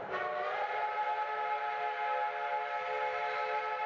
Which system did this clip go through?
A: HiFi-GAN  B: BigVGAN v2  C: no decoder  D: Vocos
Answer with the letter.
C